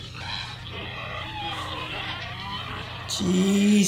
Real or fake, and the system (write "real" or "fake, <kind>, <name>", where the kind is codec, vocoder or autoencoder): real